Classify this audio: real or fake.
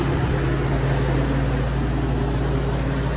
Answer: real